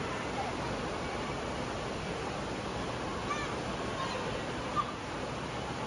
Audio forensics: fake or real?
real